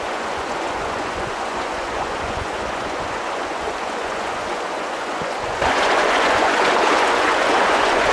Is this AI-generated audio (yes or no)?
yes